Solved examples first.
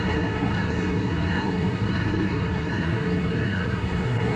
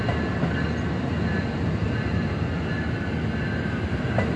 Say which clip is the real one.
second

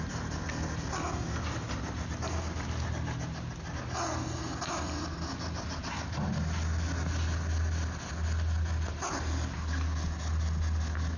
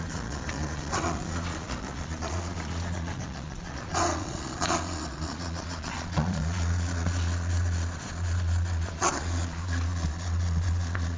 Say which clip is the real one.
first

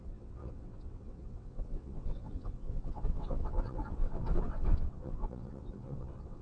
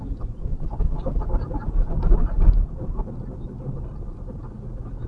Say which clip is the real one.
second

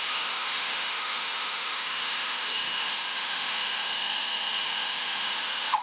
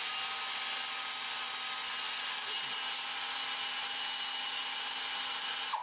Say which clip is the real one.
second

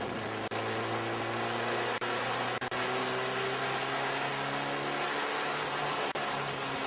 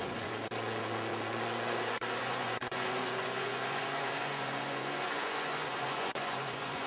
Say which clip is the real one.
first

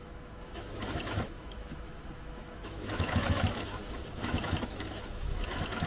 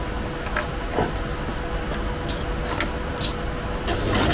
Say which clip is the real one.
second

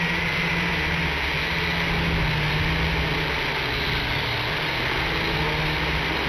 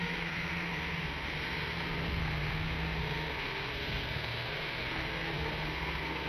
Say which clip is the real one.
first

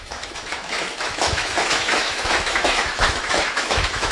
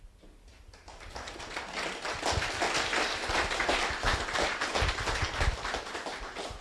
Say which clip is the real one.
second